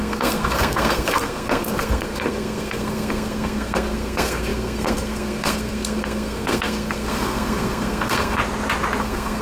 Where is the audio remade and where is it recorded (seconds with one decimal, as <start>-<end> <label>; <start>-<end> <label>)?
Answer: 0.0-8.4 remade; 8.4-9.0 recorded; 9.0-9.4 remade